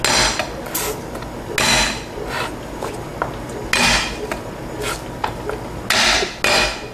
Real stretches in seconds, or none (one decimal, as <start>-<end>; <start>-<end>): 0.0-6.9